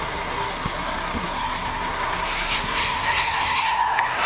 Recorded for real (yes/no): no